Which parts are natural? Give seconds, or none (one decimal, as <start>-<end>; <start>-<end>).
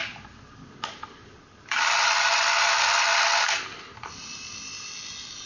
0.0-5.5